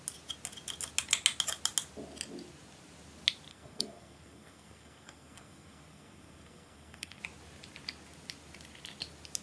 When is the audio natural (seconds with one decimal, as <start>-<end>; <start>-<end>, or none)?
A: 0.0-3.5; 7.2-9.4